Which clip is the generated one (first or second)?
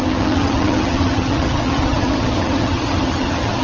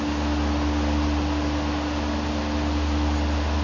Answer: first